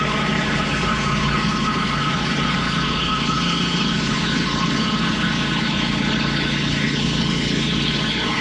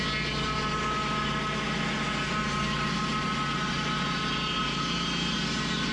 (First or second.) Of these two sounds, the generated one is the first